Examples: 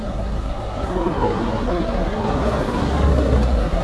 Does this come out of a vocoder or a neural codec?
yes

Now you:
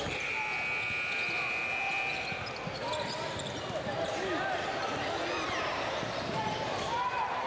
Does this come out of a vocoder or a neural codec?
no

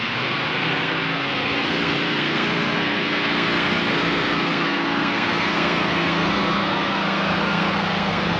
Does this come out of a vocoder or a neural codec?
yes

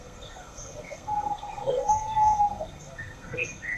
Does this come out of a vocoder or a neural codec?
yes